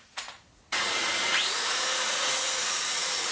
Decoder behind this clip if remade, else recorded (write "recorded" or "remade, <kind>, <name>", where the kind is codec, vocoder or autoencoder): remade, vocoder, Vocos